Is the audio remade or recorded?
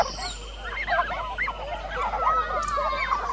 recorded